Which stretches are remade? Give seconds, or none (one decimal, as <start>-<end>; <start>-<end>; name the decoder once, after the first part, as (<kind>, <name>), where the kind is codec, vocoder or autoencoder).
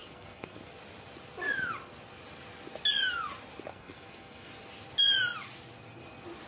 0.0-0.7 (codec, SNAC); 3.7-4.5